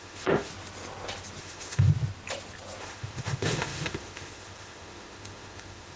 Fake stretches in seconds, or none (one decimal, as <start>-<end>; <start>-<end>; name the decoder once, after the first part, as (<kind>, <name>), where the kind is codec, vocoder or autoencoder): 0.0-0.5 (autoencoder, DAC-VAE); 1.4-1.9; 2.8-6.0